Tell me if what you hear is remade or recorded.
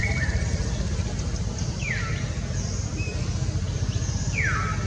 recorded